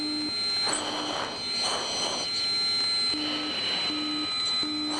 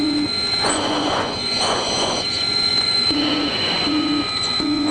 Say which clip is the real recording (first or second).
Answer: first